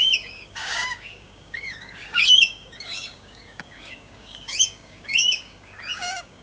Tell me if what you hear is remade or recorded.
remade